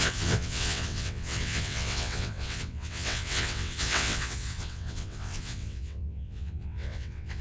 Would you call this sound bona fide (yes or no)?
no